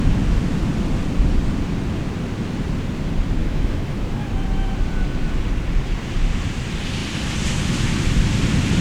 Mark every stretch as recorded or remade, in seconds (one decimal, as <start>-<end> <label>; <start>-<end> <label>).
0.0-3.4 recorded; 3.4-4.3 remade; 4.3-8.8 recorded